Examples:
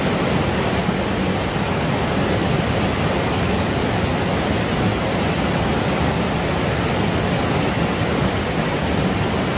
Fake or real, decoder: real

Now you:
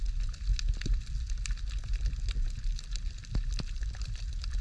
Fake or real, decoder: real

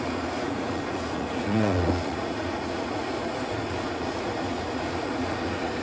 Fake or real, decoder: fake, vocoder, Vocos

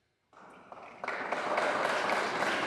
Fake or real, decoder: real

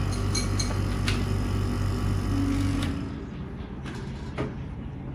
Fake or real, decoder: real